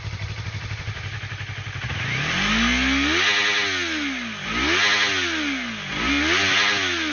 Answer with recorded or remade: recorded